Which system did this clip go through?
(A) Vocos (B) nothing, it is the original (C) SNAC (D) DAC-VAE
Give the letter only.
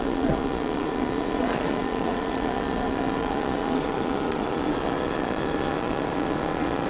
A